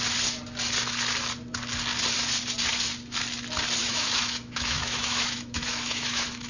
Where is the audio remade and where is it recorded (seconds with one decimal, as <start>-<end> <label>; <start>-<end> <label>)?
0.0-3.8 recorded; 3.8-6.5 remade